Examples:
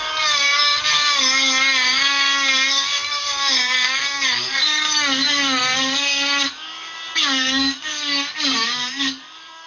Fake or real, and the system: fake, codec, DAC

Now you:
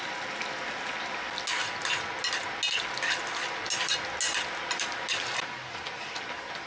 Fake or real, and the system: real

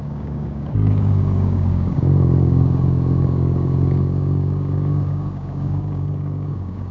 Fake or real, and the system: fake, codec, DAC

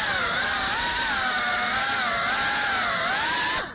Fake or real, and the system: real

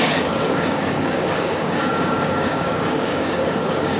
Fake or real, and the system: fake, codec, DAC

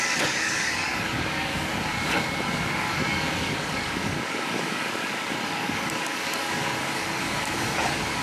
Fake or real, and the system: fake, codec, DAC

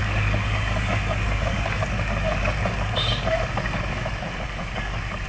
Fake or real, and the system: fake, codec, DAC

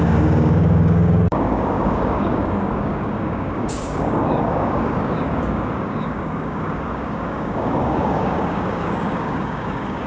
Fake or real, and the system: fake, codec, DAC